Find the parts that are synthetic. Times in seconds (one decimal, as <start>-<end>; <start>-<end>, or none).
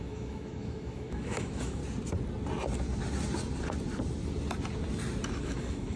0.0-1.8; 5.4-6.0